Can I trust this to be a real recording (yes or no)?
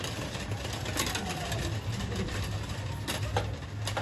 yes